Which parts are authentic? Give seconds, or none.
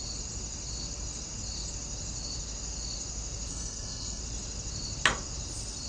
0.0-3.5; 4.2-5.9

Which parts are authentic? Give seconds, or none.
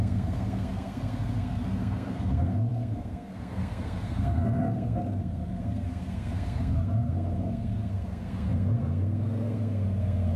none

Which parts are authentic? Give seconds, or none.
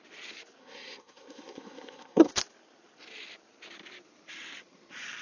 0.0-0.6; 2.3-5.2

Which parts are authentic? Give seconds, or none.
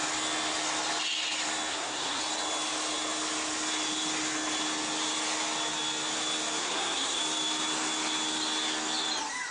0.0-1.7; 2.2-6.6; 7.2-9.5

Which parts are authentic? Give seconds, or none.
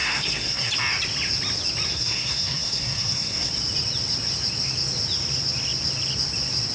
0.7-1.9; 3.5-6.7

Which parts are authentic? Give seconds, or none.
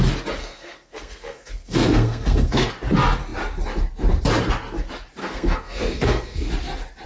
0.0-0.4; 2.7-5.2; 6.5-7.1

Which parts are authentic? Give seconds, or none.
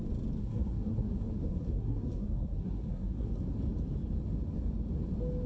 0.0-0.4; 3.3-5.5